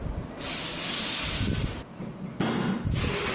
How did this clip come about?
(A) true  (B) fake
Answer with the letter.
A